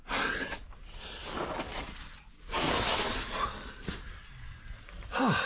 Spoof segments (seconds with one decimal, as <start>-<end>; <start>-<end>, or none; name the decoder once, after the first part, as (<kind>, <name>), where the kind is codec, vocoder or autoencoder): none